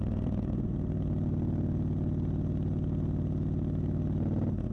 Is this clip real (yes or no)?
yes